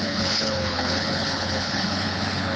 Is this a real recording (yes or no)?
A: no